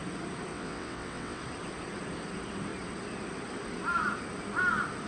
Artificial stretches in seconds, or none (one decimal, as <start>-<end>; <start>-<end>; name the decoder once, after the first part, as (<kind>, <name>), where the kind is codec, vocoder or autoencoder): 0.5-1.4 (vocoder, WaveNeXt)